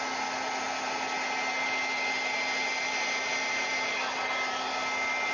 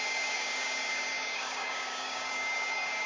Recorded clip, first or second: first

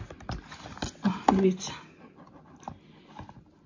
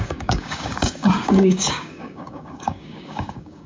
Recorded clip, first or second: first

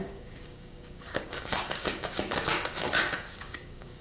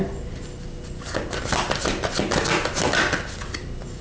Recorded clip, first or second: second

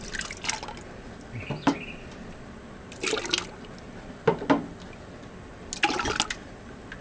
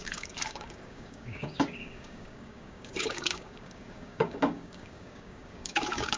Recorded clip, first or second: first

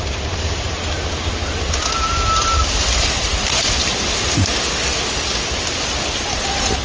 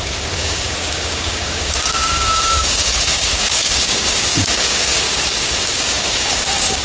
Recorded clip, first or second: first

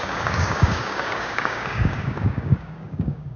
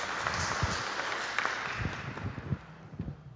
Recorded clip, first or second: second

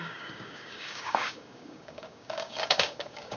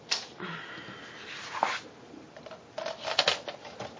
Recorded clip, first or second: second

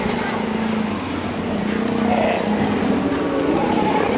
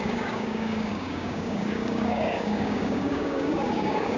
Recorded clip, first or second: first